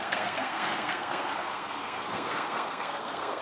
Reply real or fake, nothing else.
fake